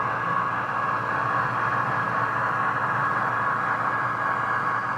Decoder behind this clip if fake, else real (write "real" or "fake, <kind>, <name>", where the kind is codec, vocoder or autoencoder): real